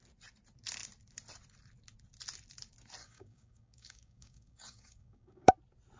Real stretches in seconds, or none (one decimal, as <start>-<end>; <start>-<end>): 0.0-3.0; 5.5-6.0